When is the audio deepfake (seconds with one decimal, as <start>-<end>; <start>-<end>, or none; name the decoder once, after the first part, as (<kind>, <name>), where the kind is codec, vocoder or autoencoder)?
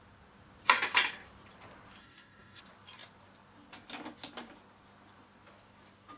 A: 2.0-2.6 (codec, DAC)